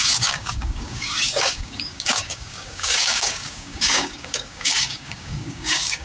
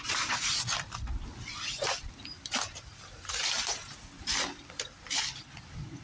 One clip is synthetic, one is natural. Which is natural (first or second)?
second